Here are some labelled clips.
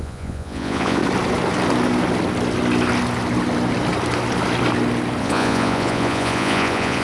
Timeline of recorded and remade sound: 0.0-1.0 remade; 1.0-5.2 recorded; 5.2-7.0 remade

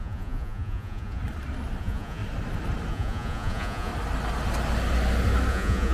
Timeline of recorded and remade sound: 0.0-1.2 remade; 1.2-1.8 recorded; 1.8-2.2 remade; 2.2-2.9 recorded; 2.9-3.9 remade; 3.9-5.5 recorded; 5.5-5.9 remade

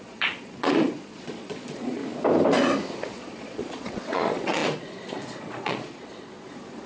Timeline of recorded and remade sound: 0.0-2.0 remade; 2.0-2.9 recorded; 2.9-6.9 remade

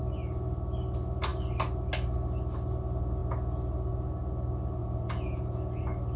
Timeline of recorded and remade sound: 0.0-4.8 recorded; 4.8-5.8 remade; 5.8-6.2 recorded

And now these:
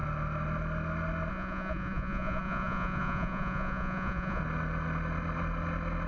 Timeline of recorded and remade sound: 0.0-1.3 recorded; 1.3-4.4 remade; 4.4-6.1 recorded